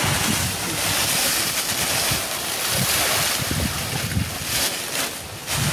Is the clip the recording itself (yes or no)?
yes